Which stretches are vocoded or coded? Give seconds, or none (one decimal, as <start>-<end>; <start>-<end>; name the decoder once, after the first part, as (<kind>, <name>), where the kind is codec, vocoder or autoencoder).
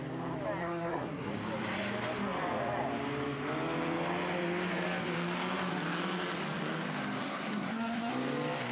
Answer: 0.6-1.3 (codec, SNAC); 7.2-8.1